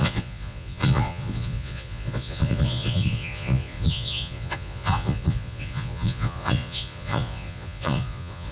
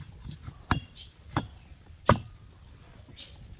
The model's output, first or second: first